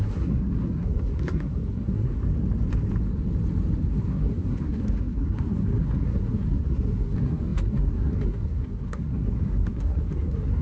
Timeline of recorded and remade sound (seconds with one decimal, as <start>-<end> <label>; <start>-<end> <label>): 0.0-2.2 remade; 2.2-3.9 recorded; 3.9-10.6 remade